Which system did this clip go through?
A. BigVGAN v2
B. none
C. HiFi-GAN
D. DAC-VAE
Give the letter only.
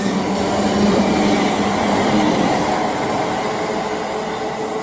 B